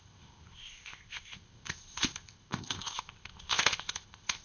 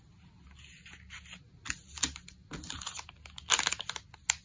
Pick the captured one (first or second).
second